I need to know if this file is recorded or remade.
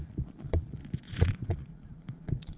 remade